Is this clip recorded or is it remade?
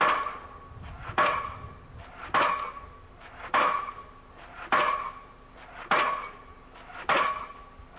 recorded